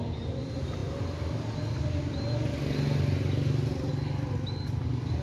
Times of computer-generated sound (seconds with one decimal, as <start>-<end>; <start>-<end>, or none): none

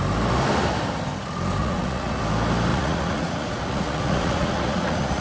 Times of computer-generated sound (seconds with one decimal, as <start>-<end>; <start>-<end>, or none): 1.6-2.2; 2.7-5.2

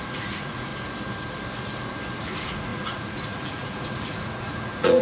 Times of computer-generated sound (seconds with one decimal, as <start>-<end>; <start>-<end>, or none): 0.0-0.7; 2.2-5.0

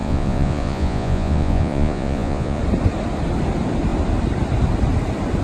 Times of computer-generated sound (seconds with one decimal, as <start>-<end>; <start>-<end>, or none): 0.0-2.6